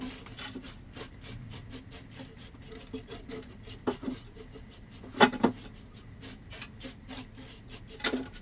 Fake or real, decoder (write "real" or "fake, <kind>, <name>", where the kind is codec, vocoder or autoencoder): real